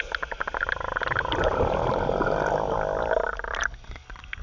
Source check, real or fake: real